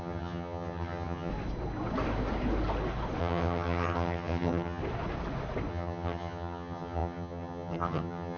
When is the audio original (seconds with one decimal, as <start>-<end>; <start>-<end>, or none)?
1.3-3.2; 4.8-5.7